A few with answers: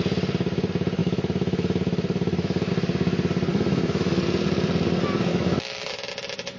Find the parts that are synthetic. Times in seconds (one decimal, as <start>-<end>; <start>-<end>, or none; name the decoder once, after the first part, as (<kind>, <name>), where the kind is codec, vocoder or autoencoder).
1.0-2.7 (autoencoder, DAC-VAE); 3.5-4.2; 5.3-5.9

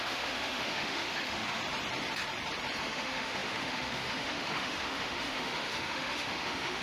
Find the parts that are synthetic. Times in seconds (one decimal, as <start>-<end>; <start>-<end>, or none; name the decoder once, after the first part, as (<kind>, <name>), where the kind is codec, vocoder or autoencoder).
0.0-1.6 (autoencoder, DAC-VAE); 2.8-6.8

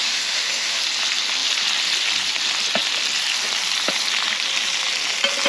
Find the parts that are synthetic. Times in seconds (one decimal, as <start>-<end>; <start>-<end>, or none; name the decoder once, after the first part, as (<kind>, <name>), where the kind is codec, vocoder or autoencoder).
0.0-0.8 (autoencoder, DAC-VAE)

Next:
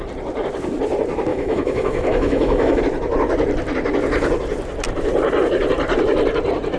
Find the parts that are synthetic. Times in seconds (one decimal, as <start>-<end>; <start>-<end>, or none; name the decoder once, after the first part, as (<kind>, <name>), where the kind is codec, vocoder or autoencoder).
1.3-2.8 (autoencoder, DAC-VAE)

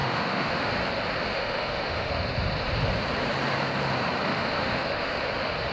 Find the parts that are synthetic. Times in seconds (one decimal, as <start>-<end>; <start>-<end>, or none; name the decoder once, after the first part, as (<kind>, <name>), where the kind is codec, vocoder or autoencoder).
0.0-0.7 (autoencoder, DAC-VAE); 1.3-2.1; 4.3-5.2

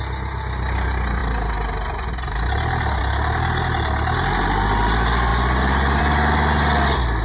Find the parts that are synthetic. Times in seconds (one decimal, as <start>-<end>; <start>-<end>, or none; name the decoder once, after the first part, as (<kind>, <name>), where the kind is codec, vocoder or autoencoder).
none